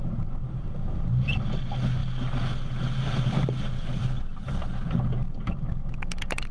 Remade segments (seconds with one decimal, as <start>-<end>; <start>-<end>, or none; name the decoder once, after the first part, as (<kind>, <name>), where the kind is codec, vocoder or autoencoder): none